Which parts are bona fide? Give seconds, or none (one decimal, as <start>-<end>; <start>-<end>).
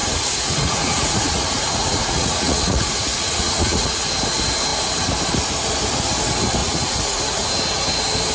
4.1-6.6; 7.5-8.3